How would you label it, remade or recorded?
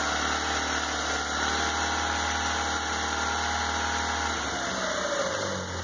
recorded